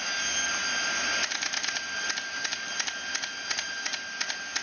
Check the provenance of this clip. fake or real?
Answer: real